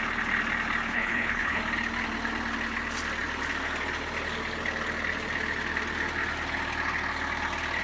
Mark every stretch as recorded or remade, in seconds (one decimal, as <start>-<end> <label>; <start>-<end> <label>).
0.0-0.9 recorded; 0.9-1.6 remade; 1.6-7.8 recorded